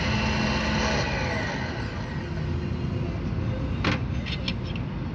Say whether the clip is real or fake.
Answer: real